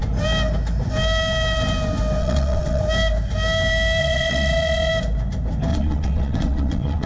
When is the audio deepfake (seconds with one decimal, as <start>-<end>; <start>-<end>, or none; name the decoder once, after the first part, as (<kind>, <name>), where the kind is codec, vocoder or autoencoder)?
2.2-2.8 (vocoder, WaveNeXt); 4.0-4.9; 5.7-7.1